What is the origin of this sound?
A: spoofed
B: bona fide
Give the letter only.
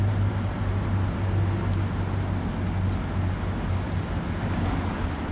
B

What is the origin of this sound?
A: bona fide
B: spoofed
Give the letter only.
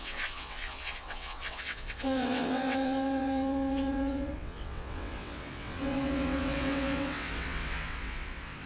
B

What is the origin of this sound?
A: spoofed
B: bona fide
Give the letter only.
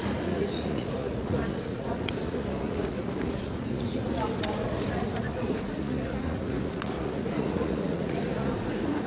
A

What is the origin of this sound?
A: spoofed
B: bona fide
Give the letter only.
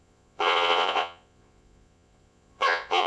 A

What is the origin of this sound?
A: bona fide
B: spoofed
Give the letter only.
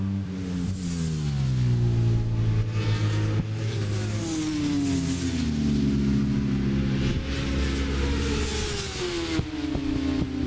A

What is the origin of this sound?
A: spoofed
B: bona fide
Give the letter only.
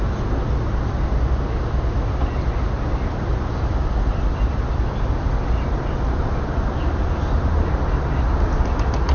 B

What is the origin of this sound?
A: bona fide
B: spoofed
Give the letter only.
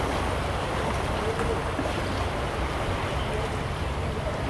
A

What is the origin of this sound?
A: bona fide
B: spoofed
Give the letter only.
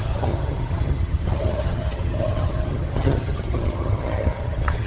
B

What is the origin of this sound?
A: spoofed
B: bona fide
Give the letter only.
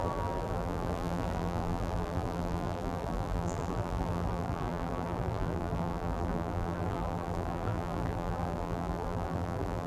A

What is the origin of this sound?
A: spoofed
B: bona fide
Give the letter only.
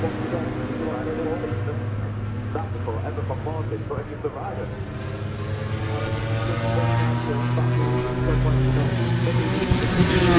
B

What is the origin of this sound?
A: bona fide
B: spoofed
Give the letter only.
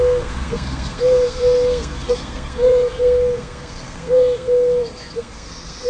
B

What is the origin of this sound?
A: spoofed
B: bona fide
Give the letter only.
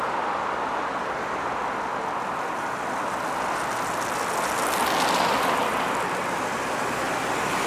B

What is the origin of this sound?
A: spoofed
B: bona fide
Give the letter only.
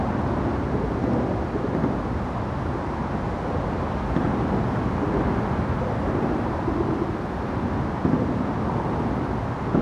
B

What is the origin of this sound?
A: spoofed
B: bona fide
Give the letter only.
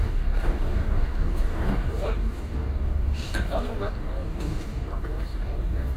A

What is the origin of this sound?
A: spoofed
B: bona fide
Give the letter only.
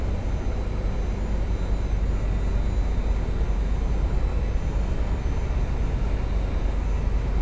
B